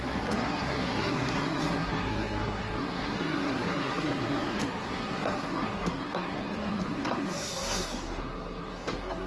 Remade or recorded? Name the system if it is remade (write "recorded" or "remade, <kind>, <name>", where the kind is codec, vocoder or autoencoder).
remade, codec, SNAC